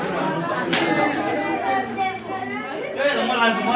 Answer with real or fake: real